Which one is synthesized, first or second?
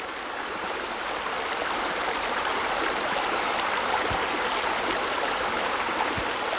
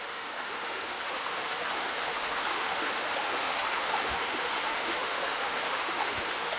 second